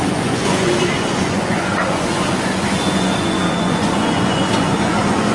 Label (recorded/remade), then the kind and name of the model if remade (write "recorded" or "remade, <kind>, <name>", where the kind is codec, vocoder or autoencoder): remade, vocoder, Vocos